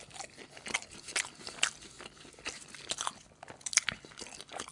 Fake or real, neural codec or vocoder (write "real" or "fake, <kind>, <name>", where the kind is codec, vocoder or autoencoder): real